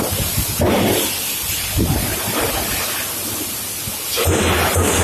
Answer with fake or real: real